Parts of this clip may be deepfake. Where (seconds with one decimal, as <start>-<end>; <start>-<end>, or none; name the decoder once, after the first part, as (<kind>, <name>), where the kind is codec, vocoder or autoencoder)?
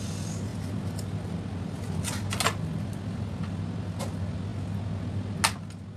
none